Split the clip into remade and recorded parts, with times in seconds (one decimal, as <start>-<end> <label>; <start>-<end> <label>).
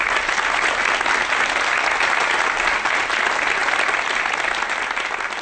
0.0-5.4 recorded